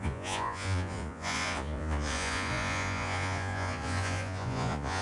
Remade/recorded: remade